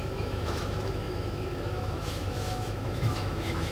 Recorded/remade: remade